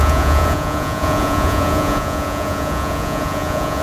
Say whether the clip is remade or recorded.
remade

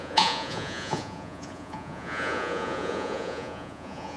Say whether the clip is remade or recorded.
remade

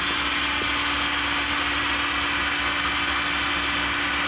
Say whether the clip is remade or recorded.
recorded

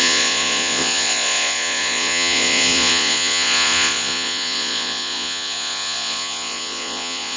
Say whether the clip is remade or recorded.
remade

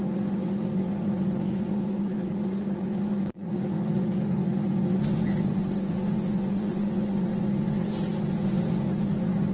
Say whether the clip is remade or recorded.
remade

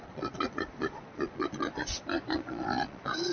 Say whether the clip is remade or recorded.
remade